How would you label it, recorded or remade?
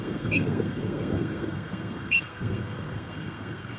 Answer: remade